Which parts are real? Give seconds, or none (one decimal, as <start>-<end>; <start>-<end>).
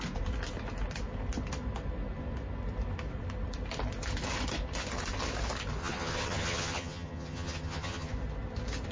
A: 0.0-5.8; 8.1-8.9